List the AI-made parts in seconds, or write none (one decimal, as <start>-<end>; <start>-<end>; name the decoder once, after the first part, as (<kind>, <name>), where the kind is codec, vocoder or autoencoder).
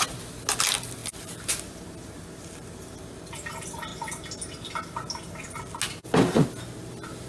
1.0-1.6 (vocoder, BigVGAN v2)